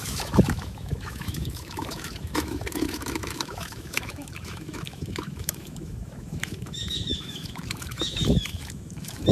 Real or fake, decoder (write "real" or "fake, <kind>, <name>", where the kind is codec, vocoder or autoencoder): fake, autoencoder, DAC-VAE